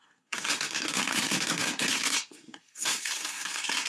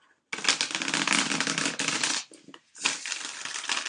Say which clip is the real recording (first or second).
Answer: second